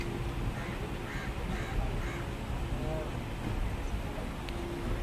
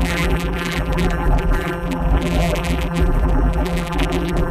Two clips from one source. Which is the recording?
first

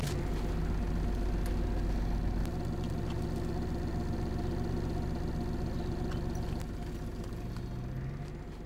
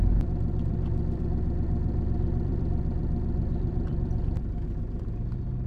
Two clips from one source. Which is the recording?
first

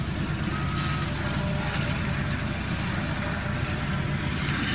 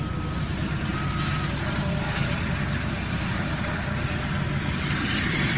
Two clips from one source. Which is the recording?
first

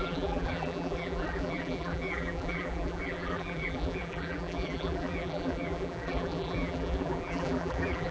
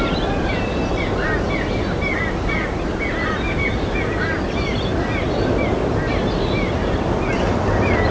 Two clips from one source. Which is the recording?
second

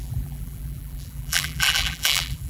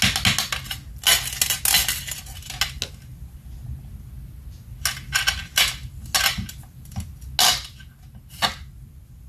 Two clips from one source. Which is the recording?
second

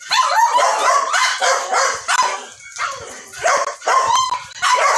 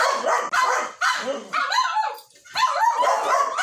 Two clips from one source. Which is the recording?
second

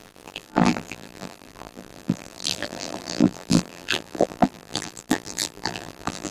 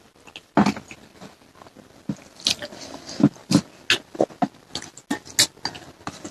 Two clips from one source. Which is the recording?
second